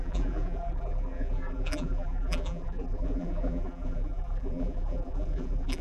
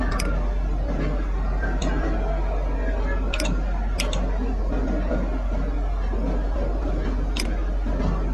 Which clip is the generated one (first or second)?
first